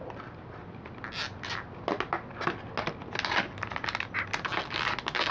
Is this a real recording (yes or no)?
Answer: yes